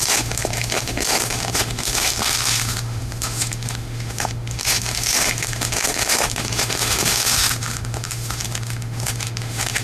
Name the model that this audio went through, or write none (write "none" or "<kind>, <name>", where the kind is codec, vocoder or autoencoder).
autoencoder, DAC-VAE